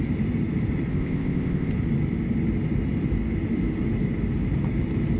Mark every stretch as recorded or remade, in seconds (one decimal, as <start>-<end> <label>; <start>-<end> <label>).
0.0-0.9 recorded; 0.9-1.7 remade; 1.7-5.2 recorded